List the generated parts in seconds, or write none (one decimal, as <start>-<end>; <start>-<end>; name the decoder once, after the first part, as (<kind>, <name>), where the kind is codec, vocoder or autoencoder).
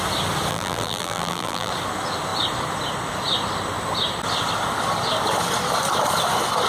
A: 0.5-1.7 (vocoder, BigVGAN v2)